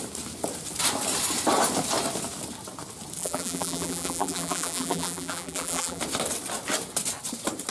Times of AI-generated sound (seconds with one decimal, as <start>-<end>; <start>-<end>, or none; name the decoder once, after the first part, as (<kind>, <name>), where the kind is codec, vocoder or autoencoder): 3.2-6.0 (vocoder, BigVGAN v2)